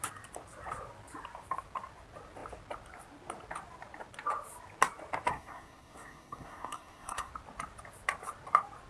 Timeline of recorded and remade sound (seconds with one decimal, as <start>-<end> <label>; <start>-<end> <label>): 0.0-5.3 recorded; 5.3-7.3 remade; 7.3-8.9 recorded